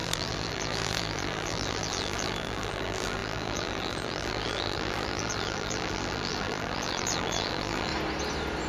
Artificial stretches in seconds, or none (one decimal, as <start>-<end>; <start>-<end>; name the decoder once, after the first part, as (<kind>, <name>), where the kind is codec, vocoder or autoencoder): 0.0-7.9 (vocoder, BigVGAN v2)